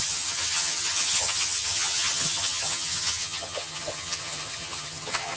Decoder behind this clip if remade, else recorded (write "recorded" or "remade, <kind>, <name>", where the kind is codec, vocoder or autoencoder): remade, vocoder, HiFi-GAN